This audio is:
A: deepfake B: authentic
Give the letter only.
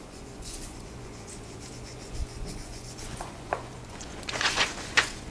A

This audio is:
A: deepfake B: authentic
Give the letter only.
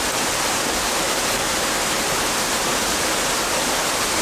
B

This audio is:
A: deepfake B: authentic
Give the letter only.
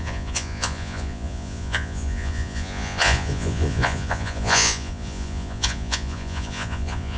A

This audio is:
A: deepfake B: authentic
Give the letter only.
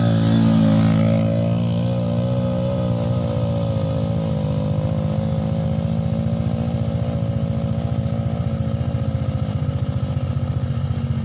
B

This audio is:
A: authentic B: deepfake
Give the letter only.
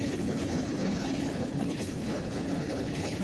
B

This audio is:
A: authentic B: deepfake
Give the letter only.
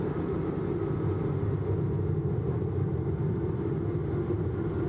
A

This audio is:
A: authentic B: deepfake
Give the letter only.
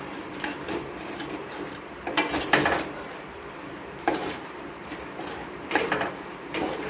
B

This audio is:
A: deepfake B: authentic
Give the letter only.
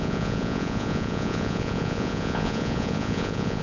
A